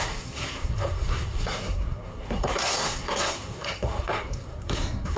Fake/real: fake